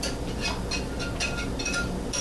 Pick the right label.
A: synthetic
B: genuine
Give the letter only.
B